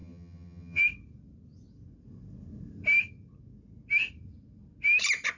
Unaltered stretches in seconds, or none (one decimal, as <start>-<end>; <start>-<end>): 0.8-5.4